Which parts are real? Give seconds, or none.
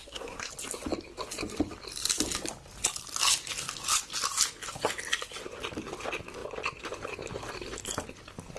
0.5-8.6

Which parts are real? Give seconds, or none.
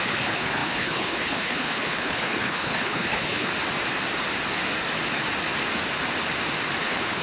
3.5-6.8